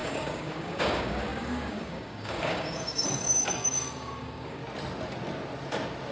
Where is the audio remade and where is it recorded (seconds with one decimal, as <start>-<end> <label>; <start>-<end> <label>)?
0.0-4.6 remade; 4.6-6.1 recorded